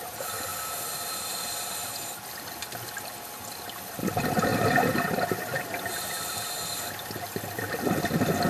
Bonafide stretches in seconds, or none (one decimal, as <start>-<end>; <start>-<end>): 0.0-8.5

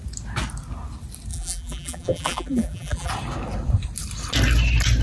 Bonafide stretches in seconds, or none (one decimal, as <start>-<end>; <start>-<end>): 0.0-1.3; 3.1-5.0

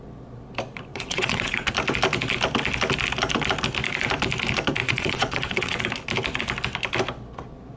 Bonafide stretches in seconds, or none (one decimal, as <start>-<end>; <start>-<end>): 0.0-0.9; 1.7-4.8; 5.8-7.8

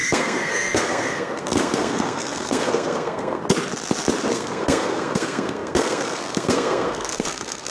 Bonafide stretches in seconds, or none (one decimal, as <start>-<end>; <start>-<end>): 3.4-4.3

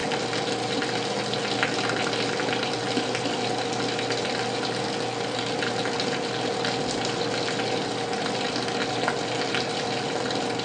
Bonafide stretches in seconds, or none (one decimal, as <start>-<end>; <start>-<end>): 0.0-10.6

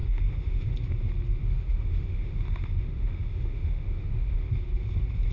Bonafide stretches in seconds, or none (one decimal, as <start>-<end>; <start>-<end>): 0.7-1.4; 4.5-5.3